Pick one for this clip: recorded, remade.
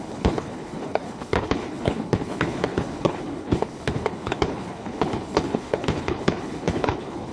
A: remade